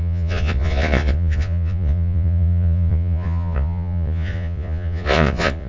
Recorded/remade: remade